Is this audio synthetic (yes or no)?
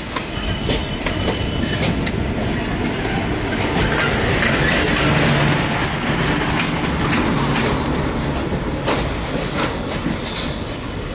no